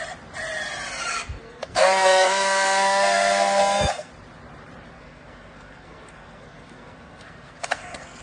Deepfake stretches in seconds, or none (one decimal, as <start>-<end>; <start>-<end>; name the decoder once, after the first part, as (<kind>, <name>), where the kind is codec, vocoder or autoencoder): 1.1-4.1 (codec, SNAC); 4.9-8.2